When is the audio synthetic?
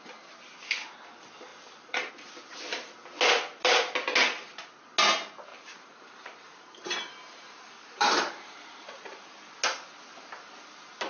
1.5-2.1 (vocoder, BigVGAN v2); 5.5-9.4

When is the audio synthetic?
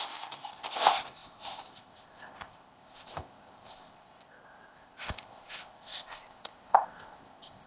0.0-7.7 (codec, ZipCodec)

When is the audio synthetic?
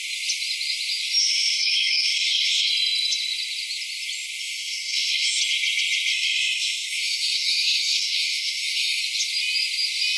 1.2-2.7 (codec, SNAC); 4.4-5.4; 6.1-9.0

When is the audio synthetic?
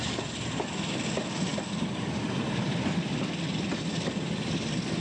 none